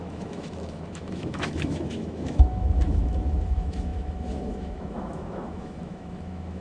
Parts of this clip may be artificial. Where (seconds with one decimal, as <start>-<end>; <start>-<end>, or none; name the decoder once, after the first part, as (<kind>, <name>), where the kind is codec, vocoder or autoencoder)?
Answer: 0.0-6.6 (autoencoder, DAC-VAE)